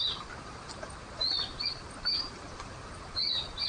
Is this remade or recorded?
remade